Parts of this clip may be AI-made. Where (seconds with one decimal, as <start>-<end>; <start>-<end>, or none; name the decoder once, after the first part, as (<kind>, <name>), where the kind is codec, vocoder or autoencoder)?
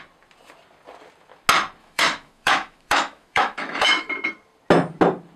1.8-4.1 (autoencoder, DAC-VAE)